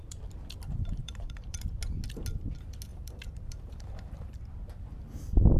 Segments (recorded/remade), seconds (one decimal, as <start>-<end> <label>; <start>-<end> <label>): 0.0-1.0 recorded; 1.0-1.7 remade; 1.7-2.9 recorded; 2.9-4.5 remade; 4.5-5.6 recorded